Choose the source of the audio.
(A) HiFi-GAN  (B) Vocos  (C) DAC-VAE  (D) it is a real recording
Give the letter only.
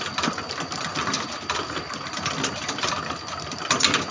D